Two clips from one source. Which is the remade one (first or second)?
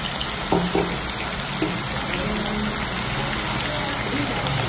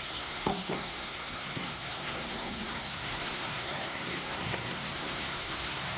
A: second